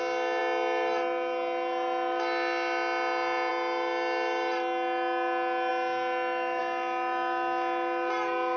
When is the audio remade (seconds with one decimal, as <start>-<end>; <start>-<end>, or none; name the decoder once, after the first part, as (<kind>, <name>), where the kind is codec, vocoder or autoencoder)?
none

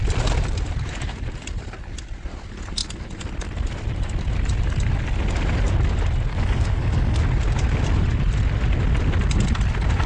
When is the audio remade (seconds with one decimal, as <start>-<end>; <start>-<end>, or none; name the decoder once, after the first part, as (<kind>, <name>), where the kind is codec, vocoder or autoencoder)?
6.3-7.2 (codec, DAC)

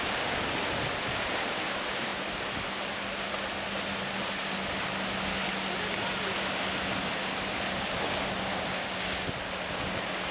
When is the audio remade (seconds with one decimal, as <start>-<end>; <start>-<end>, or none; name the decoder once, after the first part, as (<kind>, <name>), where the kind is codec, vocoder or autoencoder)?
none

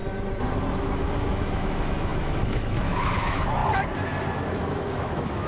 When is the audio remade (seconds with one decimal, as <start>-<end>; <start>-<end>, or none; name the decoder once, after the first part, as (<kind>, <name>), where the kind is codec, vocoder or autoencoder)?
0.8-3.6 (autoencoder, DAC-VAE); 4.5-5.5

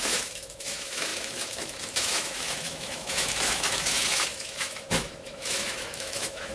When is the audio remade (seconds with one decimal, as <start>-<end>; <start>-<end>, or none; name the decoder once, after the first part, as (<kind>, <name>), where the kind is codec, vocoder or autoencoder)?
0.0-6.5 (autoencoder, DAC-VAE)

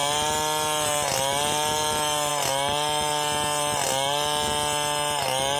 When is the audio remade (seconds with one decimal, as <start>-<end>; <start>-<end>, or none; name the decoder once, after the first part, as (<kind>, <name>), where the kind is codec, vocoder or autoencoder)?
none

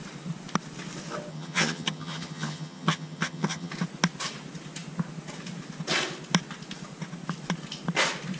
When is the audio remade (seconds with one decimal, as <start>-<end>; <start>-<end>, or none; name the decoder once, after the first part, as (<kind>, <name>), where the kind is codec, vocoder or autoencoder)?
1.3-3.7 (vocoder, HiFi-GAN)